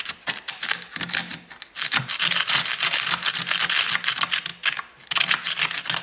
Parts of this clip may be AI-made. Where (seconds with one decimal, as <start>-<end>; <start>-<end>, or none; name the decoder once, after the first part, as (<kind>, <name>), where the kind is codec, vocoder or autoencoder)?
none